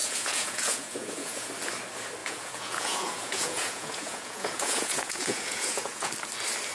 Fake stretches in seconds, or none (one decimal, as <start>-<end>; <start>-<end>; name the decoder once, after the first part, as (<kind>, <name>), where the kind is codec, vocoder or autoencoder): 0.0-1.5 (vocoder, Vocos); 2.2-6.1